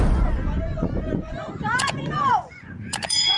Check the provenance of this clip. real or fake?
fake